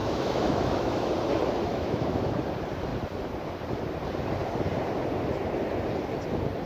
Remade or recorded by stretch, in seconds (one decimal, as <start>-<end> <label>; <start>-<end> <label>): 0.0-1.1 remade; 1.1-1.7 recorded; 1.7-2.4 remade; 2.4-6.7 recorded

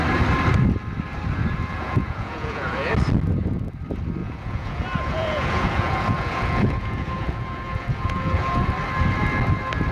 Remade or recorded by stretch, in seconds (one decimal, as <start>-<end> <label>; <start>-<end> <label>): 0.0-1.7 recorded; 1.7-2.9 remade; 2.9-4.2 recorded; 4.2-8.7 remade; 8.7-9.9 recorded

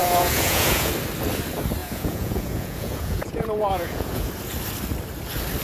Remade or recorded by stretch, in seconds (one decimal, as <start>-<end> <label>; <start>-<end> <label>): 0.0-0.9 remade; 0.9-1.8 recorded; 1.8-4.3 remade; 4.3-5.6 recorded

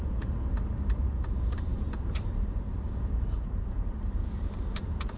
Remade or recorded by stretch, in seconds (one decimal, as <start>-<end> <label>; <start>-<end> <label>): 0.0-5.2 remade